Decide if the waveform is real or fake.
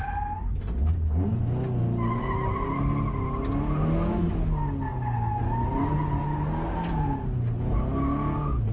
real